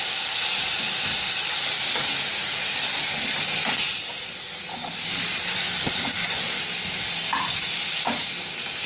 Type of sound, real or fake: real